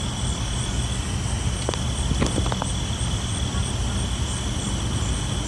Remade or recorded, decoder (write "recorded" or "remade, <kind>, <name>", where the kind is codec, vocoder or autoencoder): recorded